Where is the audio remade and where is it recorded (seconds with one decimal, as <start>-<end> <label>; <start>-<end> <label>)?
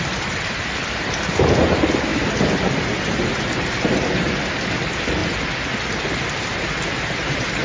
0.0-7.6 recorded